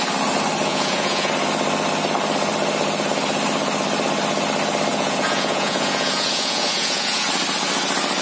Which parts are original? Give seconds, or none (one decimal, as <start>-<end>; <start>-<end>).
0.0-0.7; 1.3-4.9; 7.3-8.2